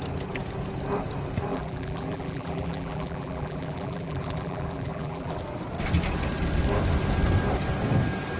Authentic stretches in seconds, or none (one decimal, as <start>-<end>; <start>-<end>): 0.0-1.5; 5.4-8.4